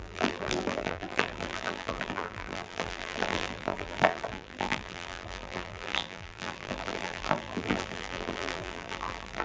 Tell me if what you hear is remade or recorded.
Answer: remade